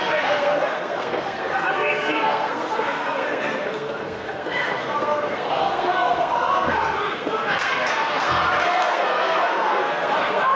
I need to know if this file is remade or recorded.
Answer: remade